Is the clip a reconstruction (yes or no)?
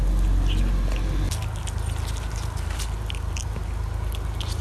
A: no